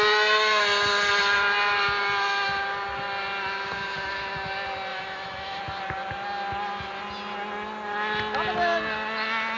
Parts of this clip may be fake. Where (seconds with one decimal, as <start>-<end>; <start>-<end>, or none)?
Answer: 4.9-5.6